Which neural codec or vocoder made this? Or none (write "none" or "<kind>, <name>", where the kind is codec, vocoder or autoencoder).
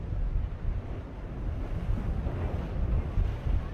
none